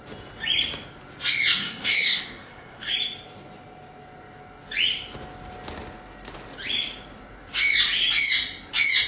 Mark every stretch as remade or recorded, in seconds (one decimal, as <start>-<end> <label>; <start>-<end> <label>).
0.0-1.6 recorded; 1.6-2.9 remade; 2.9-9.1 recorded